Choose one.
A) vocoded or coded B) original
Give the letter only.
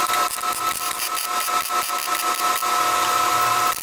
B